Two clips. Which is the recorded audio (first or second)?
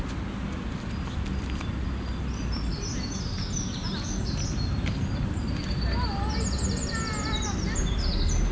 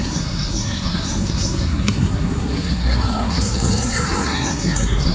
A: first